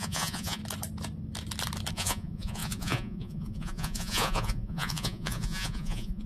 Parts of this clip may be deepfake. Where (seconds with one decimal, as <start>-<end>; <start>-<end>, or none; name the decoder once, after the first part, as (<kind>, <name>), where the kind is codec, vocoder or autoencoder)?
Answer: 0.0-0.6 (vocoder, Vocos); 1.9-6.3

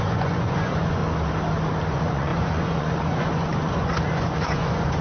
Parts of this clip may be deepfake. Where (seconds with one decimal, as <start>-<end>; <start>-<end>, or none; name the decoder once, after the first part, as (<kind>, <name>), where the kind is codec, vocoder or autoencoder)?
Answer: 0.0-1.0 (vocoder, Vocos); 1.9-5.0

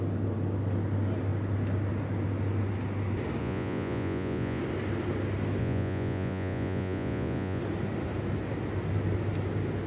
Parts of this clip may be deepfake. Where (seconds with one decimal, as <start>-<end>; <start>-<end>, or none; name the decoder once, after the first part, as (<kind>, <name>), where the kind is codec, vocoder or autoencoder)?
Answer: 3.4-4.6 (vocoder, Vocos); 5.6-7.6

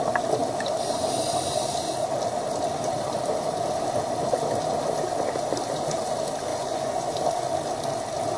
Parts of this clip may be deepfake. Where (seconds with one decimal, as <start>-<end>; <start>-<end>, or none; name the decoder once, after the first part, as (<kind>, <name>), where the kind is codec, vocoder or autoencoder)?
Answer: 6.5-7.1 (vocoder, Vocos)

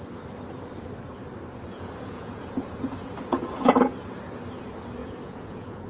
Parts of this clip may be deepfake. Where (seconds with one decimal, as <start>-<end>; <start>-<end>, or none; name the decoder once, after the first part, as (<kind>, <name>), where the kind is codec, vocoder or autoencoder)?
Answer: 1.7-4.2 (vocoder, Vocos); 5.0-5.9

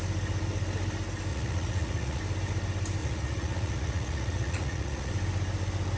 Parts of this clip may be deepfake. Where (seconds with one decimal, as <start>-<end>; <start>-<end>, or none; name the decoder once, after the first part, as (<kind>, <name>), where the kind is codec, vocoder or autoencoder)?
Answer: 1.3-2.2 (vocoder, Vocos); 3.0-5.1